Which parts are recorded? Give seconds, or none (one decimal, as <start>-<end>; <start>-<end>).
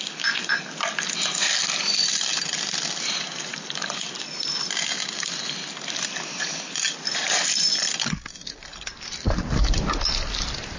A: 0.0-10.8